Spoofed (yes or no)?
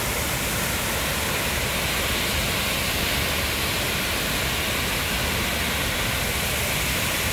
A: no